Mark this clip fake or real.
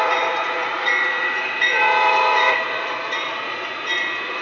fake